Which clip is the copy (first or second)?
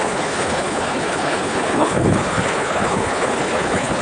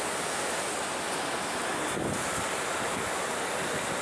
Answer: first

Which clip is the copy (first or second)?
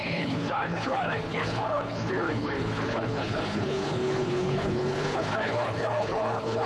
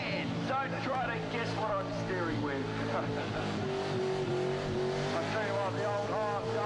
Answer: first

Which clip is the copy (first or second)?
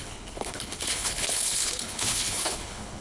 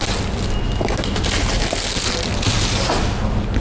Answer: first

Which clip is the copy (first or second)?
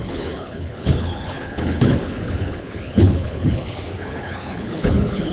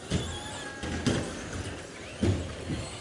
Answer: first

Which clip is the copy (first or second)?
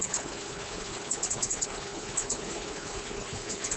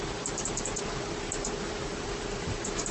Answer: first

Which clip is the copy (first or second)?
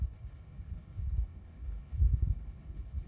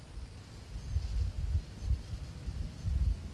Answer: first